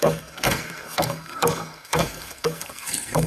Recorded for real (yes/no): no